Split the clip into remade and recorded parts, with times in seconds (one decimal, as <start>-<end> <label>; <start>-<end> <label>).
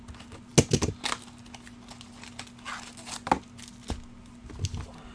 0.0-5.1 recorded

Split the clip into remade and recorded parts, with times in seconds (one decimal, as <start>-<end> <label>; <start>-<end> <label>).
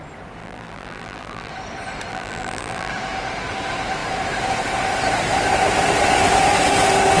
0.0-0.4 recorded; 0.4-1.5 remade; 1.5-2.1 recorded; 2.1-2.9 remade; 2.9-7.2 recorded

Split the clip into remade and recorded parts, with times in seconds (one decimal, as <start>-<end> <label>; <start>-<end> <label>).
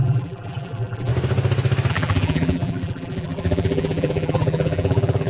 0.0-1.1 remade; 1.1-1.9 recorded; 1.9-5.3 remade